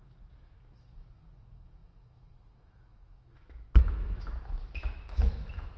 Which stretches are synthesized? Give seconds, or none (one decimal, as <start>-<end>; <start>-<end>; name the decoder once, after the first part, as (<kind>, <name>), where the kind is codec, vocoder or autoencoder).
0.0-5.8 (autoencoder, DAC-VAE)